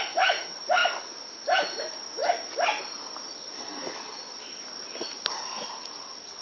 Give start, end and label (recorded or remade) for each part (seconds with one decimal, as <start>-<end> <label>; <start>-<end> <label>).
0.0-6.4 recorded